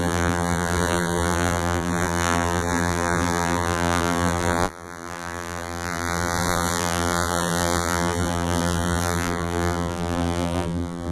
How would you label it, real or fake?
fake